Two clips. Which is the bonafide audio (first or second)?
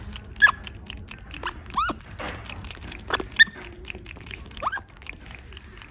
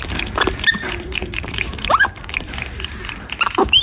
first